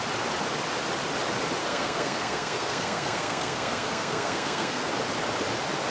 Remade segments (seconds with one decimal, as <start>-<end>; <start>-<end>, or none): 1.6-4.9